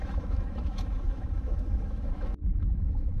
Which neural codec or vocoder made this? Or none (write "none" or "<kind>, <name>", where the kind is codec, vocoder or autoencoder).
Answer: autoencoder, DAC-VAE